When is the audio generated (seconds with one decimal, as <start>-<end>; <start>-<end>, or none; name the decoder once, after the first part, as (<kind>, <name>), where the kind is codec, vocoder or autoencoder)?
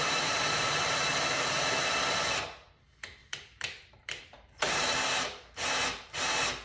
0.0-1.1 (vocoder, BigVGAN v2); 3.2-4.9